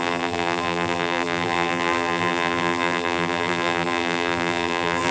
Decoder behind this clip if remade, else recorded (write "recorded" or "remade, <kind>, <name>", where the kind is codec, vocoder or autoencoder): remade, vocoder, BigVGAN v2